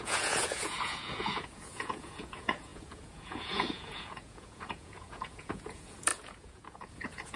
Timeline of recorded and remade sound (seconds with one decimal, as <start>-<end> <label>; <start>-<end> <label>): 0.0-7.4 remade